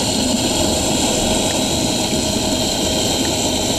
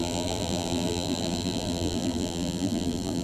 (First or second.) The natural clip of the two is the first